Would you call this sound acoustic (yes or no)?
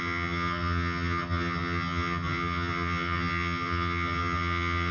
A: no